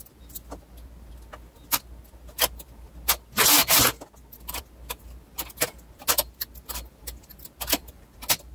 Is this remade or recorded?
recorded